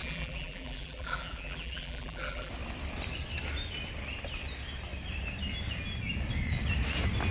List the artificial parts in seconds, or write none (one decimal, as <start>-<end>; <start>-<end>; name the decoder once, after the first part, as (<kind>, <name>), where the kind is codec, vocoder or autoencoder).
0.0-2.5 (vocoder, BigVGAN v2)